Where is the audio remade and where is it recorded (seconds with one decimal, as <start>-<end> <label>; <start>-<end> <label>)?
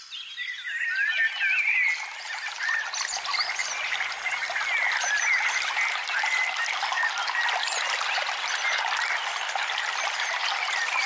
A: 0.0-11.1 recorded